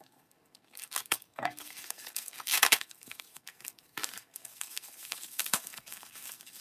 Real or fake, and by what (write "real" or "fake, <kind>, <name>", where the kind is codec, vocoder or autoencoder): fake, codec, SNAC